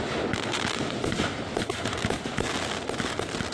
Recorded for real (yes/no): yes